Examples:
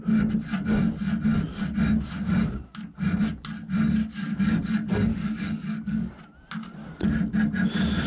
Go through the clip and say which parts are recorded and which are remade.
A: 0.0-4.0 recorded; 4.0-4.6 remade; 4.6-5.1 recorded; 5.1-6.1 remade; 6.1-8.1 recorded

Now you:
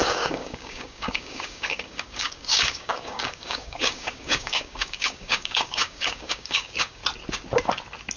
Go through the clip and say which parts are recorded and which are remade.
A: 0.0-7.0 remade; 7.0-8.2 recorded

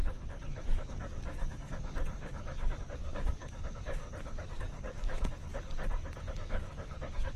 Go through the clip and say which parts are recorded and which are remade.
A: 0.0-5.5 remade; 5.5-6.3 recorded; 6.3-7.4 remade

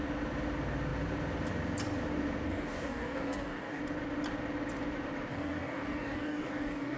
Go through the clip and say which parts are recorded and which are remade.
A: 0.0-2.5 recorded; 2.5-3.8 remade; 3.8-5.3 recorded; 5.3-7.0 remade

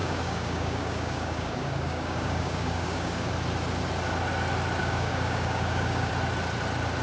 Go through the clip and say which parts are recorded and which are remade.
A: 0.0-3.3 remade; 3.3-4.8 recorded; 4.8-6.1 remade; 6.1-7.0 recorded

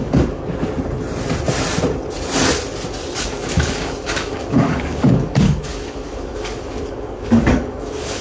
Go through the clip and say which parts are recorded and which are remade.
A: 0.0-0.4 remade; 0.4-3.2 recorded; 3.2-8.2 remade

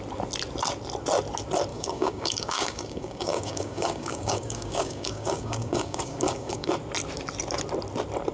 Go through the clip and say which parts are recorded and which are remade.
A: 0.0-1.7 recorded; 1.7-6.7 remade; 6.7-8.3 recorded